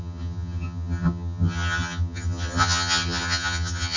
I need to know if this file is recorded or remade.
remade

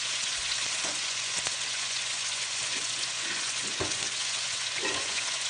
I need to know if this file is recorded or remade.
remade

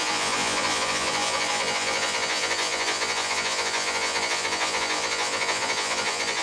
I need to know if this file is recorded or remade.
remade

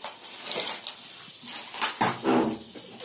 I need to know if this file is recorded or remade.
recorded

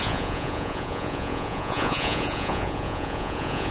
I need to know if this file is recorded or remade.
remade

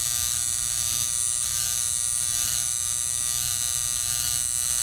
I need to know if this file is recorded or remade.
recorded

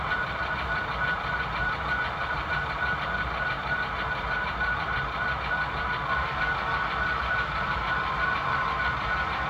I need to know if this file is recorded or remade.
remade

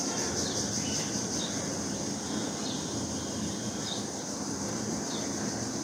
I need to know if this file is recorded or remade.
recorded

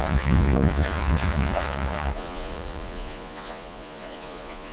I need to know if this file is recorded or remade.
remade